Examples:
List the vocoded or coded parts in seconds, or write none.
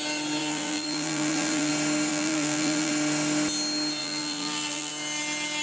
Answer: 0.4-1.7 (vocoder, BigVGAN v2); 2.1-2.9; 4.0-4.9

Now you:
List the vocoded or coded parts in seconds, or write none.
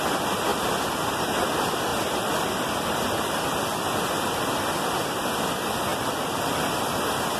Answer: 0.5-1.2 (vocoder, BigVGAN v2); 1.9-3.4